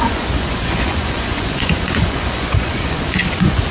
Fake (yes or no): yes